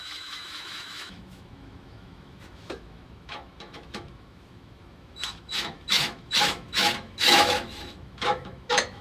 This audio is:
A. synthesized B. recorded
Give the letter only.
A